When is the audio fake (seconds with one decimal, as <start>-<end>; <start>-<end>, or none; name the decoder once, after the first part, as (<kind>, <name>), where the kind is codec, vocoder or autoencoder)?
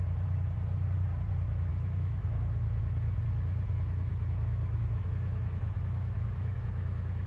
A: 1.7-2.8 (autoencoder, DAC-VAE); 4.1-7.3